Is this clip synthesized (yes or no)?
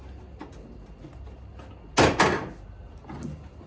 no